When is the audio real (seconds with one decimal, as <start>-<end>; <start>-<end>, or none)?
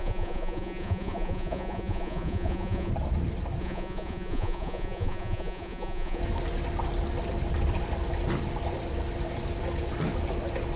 2.9-3.6; 6.2-10.8